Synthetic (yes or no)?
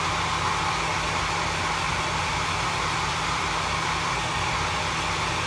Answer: no